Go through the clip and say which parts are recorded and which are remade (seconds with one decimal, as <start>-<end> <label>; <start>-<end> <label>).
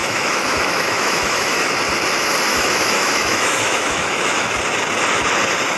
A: 0.0-1.7 remade; 1.7-2.5 recorded; 2.5-4.6 remade; 4.6-5.8 recorded